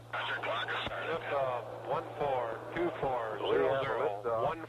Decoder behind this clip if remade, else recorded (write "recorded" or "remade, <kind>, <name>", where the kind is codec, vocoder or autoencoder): recorded